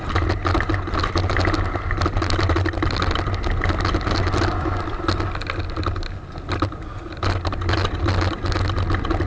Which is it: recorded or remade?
recorded